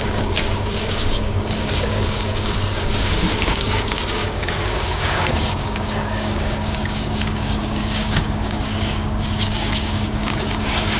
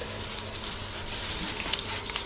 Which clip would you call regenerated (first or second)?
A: first